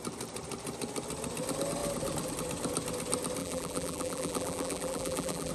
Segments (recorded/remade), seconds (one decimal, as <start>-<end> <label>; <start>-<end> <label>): 0.0-3.4 recorded; 3.4-5.5 remade